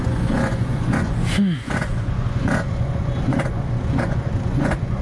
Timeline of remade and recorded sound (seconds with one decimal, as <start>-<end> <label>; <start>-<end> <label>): 0.0-5.0 remade